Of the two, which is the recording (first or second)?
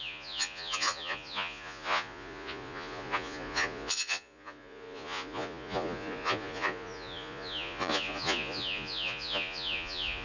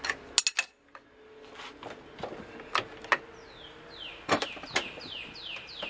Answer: second